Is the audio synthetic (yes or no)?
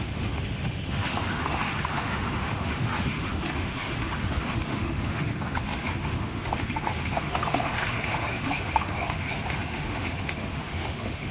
yes